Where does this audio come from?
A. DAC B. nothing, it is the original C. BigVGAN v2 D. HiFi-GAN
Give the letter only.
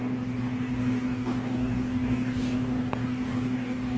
A